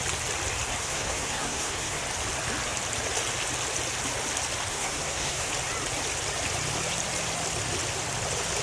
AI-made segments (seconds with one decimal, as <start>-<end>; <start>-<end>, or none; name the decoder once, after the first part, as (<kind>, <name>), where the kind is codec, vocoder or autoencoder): 0.8-2.0 (codec, SNAC); 4.7-5.5